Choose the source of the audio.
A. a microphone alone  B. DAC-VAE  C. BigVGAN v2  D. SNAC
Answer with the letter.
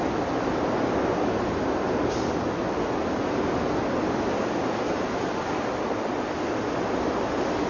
A